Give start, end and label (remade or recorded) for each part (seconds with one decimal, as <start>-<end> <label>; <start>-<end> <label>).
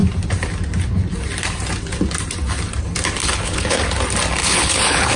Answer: 0.0-3.2 recorded; 3.2-3.8 remade; 3.8-4.4 recorded; 4.4-5.2 remade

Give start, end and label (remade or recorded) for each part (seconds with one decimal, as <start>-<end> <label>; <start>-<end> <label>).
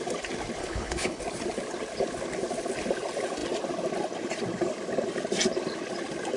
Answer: 0.0-0.6 recorded; 0.6-1.2 remade; 1.2-6.4 recorded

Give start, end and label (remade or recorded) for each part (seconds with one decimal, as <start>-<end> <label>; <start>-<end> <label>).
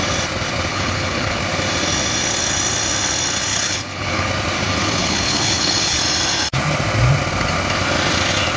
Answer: 0.0-0.7 recorded; 0.7-1.4 remade; 1.4-3.5 recorded; 3.5-4.3 remade; 4.3-5.0 recorded; 5.0-6.0 remade; 6.0-8.6 recorded